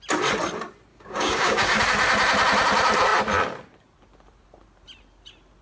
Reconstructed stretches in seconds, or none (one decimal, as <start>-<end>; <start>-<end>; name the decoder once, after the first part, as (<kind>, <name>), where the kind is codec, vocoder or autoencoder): 0.9-1.8 (codec, DAC)